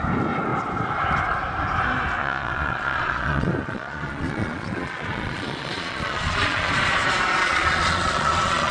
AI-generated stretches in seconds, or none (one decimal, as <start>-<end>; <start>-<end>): 2.2-6.7; 7.4-8.7